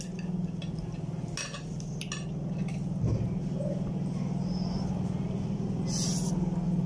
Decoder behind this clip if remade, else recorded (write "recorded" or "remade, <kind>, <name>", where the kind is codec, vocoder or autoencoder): recorded